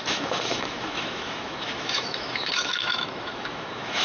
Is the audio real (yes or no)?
no